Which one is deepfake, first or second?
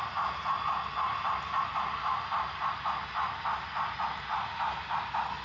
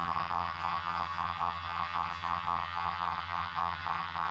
second